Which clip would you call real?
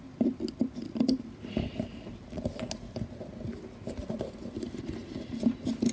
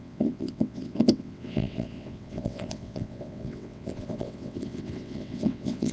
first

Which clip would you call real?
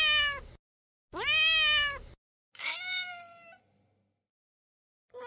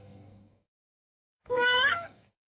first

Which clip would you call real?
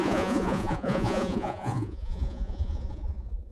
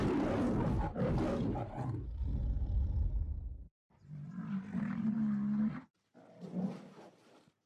second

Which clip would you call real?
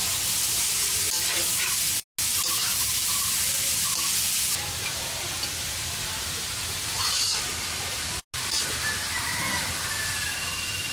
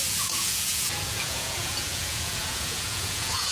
first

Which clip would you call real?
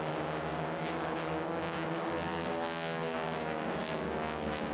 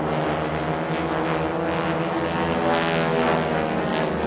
second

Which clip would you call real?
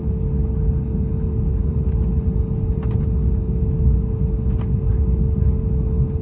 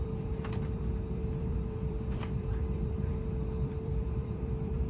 first